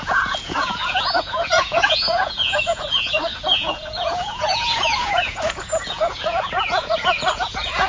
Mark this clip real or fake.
fake